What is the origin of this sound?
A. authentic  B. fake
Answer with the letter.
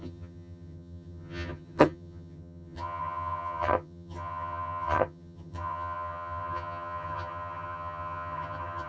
B